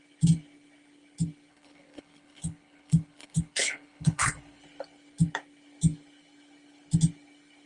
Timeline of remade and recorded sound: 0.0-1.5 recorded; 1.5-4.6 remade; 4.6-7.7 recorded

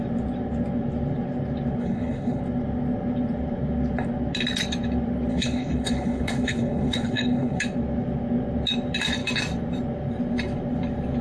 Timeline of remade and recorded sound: 0.0-1.8 recorded; 1.8-2.4 remade; 2.4-5.3 recorded; 5.3-7.6 remade; 7.6-11.2 recorded

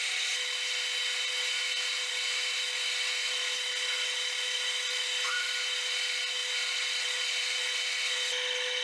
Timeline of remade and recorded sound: 0.0-8.8 recorded

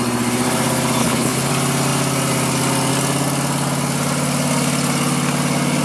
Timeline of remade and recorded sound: 0.0-1.0 recorded; 1.0-1.5 remade; 1.5-5.8 recorded

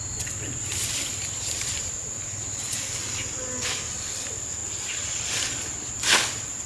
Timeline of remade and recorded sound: 0.0-6.7 recorded

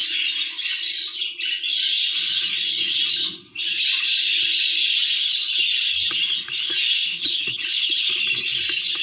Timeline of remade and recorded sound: 0.0-7.1 recorded; 7.1-8.2 remade; 8.2-9.0 recorded

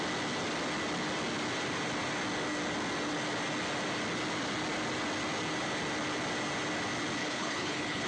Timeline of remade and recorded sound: 0.0-7.2 recorded; 7.2-8.1 remade

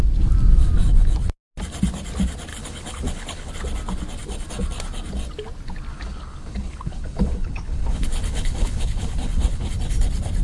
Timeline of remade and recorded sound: 0.0-2.5 recorded; 2.5-3.5 remade; 3.5-5.9 recorded; 5.9-9.7 remade; 9.7-10.4 recorded